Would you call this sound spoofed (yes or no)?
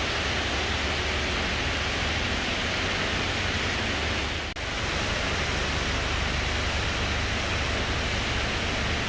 no